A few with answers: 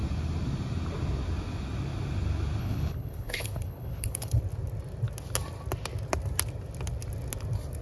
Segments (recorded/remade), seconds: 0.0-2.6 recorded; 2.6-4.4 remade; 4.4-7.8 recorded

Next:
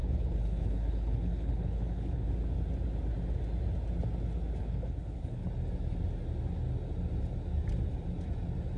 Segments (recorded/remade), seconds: 0.0-2.3 remade; 2.3-4.6 recorded; 4.6-5.5 remade; 5.5-8.8 recorded

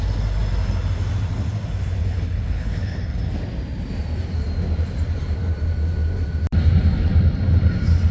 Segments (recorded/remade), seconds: 0.0-2.0 recorded; 2.0-3.2 remade; 3.2-8.1 recorded

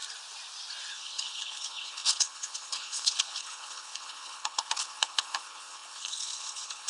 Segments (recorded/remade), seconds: 0.0-0.9 recorded; 0.9-6.9 remade

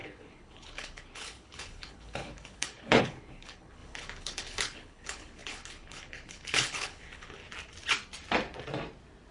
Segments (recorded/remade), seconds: 0.0-7.4 remade; 7.4-9.3 recorded